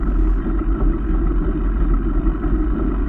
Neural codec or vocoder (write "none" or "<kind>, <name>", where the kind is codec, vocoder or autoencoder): none